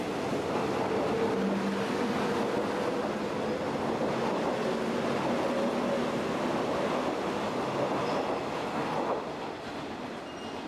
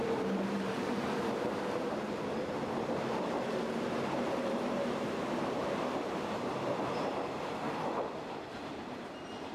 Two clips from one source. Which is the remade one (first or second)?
second